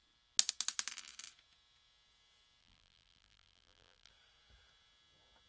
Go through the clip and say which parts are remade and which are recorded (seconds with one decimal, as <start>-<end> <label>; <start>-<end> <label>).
0.0-2.6 recorded; 2.6-4.1 remade; 4.1-5.5 recorded